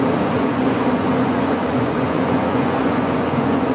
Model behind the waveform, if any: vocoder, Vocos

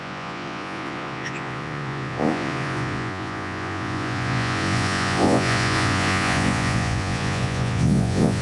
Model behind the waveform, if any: vocoder, Vocos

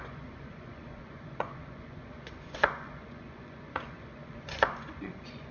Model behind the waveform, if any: vocoder, Vocos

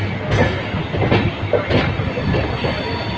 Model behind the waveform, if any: none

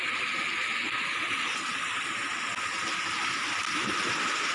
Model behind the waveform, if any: none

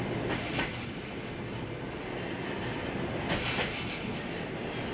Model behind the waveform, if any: none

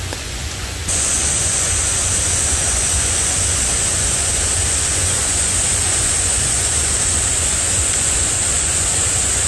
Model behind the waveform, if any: vocoder, Vocos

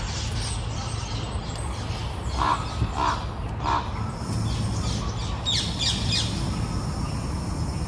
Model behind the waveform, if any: none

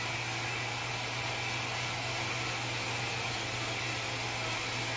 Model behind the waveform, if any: none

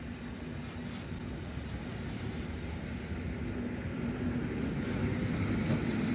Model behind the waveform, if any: none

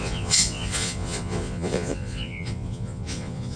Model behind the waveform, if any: vocoder, Vocos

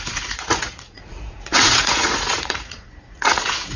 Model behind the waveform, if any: vocoder, Vocos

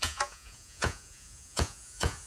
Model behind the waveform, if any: vocoder, Vocos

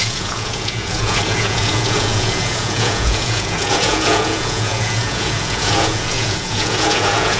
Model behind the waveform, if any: vocoder, Vocos